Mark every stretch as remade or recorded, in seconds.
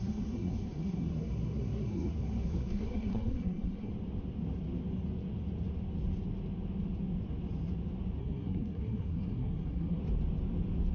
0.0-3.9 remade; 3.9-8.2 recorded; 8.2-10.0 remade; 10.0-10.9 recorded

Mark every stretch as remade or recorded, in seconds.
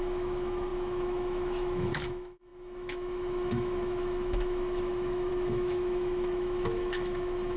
0.0-7.6 remade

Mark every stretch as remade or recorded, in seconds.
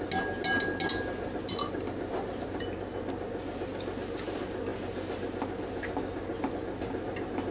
0.0-7.5 recorded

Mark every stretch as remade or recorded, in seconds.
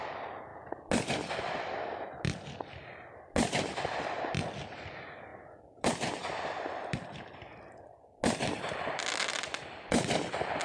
0.0-10.6 recorded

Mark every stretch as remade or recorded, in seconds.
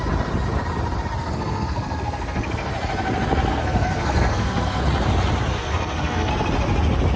0.0-1.2 recorded; 1.2-2.7 remade; 2.7-3.5 recorded; 3.5-4.8 remade; 4.8-5.5 recorded; 5.5-6.3 remade; 6.3-7.2 recorded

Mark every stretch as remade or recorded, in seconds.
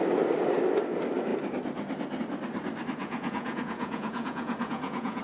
0.0-3.0 recorded; 3.0-5.2 remade